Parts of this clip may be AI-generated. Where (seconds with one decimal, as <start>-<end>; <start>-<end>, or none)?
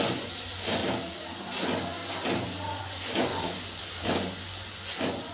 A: 0.0-0.8; 1.3-2.0; 2.8-5.3